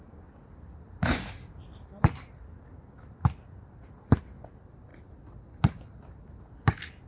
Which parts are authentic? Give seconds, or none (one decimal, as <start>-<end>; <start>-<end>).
0.0-7.1